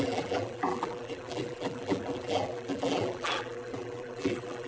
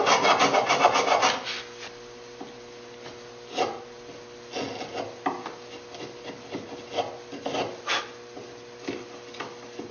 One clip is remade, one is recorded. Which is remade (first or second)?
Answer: first